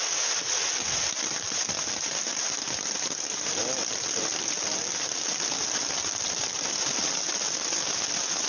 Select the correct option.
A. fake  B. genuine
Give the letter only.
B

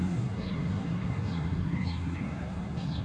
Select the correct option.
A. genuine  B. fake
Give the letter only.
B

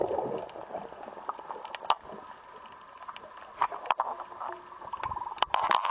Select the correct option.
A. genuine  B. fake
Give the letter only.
A